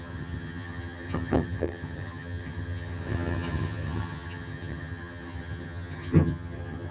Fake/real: fake